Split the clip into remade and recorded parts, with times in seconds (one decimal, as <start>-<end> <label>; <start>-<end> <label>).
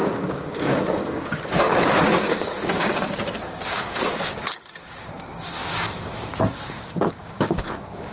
0.0-8.1 remade